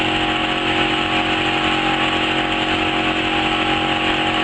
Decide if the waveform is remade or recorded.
recorded